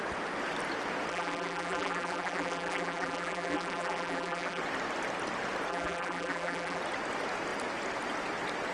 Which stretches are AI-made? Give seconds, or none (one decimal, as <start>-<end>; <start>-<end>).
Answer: 1.1-4.6; 5.7-6.8